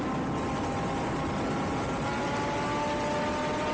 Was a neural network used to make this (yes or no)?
no